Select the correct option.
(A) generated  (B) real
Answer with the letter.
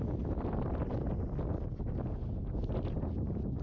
B